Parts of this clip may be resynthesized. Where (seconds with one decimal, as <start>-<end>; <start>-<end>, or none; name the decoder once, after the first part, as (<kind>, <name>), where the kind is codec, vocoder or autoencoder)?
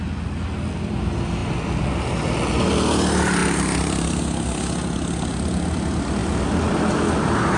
3.4-4.2 (vocoder, BigVGAN v2)